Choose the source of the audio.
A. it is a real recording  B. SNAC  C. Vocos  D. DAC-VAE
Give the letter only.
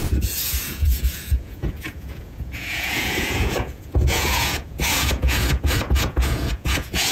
C